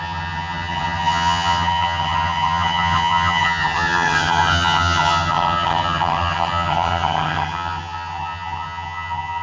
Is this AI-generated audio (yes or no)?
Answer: yes